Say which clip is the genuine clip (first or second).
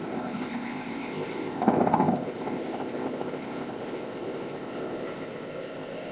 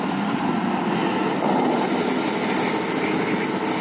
second